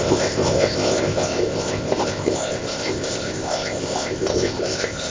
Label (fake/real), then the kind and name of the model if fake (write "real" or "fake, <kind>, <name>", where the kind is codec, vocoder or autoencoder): fake, codec, ZipCodec